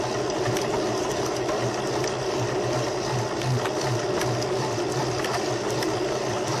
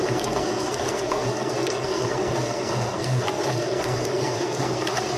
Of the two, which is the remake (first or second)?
second